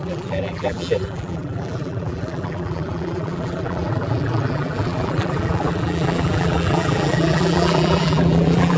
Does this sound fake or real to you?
fake